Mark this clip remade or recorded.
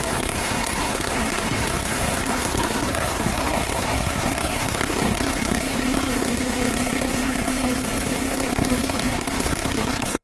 remade